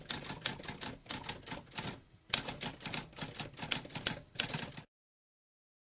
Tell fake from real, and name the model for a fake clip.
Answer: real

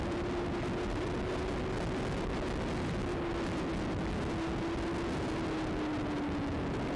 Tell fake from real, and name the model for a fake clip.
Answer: real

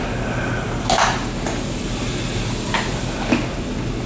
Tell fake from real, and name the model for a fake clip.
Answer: real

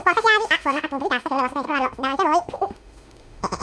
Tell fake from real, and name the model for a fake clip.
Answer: fake, autoencoder, DAC-VAE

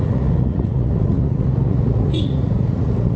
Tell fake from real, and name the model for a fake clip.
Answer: fake, vocoder, Vocos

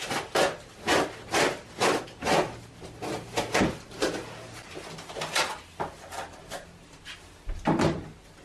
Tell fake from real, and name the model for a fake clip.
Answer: real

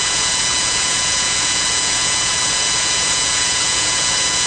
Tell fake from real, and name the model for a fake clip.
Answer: fake, vocoder, Vocos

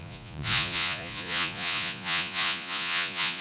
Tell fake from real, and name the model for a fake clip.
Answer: fake, vocoder, Vocos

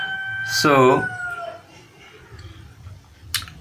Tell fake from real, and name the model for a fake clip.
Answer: real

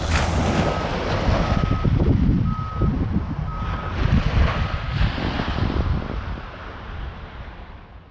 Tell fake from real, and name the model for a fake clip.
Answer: real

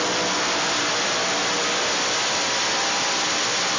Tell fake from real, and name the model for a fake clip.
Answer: real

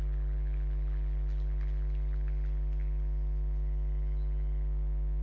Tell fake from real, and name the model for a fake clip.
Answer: real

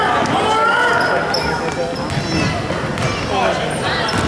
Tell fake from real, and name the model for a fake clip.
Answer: real